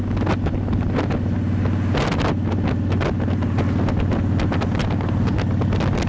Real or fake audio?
real